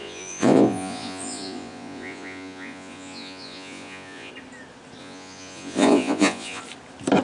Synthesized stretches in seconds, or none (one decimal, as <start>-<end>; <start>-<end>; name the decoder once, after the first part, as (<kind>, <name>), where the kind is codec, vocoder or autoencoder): 0.0-4.3 (vocoder, Vocos); 5.0-6.6